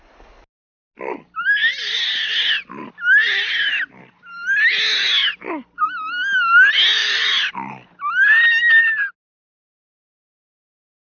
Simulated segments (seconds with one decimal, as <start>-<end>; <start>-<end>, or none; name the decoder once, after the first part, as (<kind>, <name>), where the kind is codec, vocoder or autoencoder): 7.0-7.5 (vocoder, BigVGAN v2)